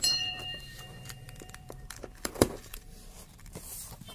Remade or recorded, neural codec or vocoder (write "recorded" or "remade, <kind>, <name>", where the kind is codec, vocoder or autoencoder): remade, vocoder, BigVGAN v2